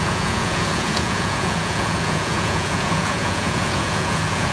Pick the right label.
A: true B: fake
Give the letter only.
B